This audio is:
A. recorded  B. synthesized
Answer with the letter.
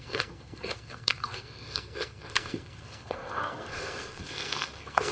B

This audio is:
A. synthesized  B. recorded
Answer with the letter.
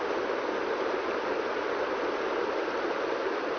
B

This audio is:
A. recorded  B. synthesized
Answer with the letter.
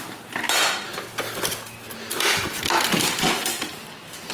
A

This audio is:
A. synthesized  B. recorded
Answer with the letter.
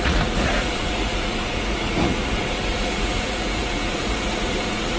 A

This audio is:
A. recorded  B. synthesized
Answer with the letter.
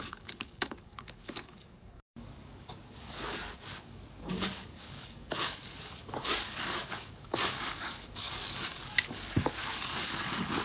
B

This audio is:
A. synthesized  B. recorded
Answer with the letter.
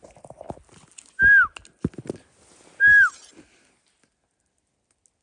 B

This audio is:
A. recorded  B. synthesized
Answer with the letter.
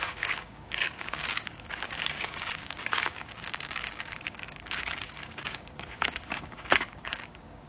B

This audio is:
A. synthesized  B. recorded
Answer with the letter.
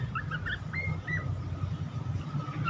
B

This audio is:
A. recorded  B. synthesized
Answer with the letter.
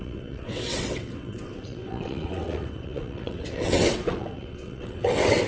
B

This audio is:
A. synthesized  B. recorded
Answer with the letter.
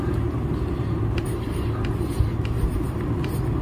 B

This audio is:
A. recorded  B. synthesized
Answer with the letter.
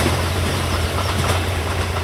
B